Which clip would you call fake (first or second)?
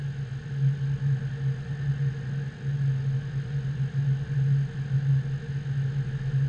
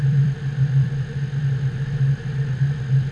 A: second